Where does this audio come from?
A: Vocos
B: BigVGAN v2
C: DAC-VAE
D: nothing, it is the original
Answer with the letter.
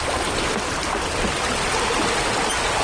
D